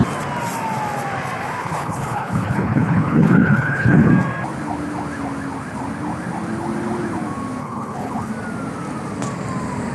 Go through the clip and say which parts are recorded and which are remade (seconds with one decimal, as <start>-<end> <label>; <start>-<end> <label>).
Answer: 0.0-1.6 recorded; 1.6-4.1 remade; 4.1-7.6 recorded; 7.6-8.3 remade; 8.3-9.9 recorded